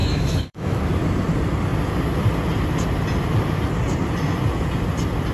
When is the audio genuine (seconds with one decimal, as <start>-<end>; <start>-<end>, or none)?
0.8-5.3